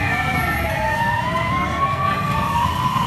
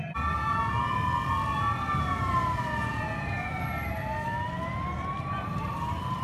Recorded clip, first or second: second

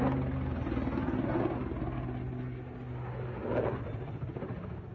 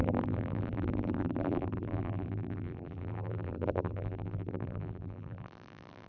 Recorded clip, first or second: first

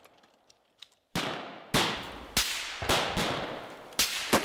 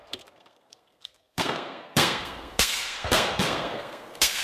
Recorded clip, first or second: first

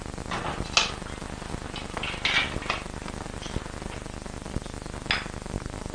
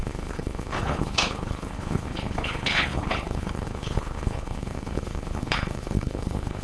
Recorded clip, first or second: first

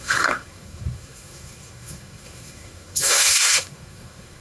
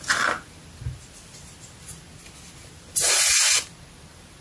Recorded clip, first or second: second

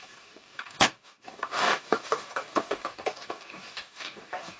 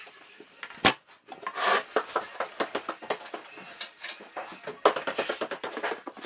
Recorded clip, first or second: second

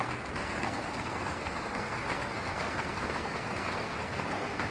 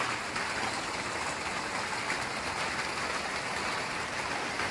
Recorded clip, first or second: second